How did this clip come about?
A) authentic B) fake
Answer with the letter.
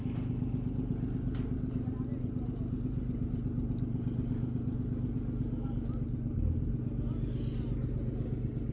A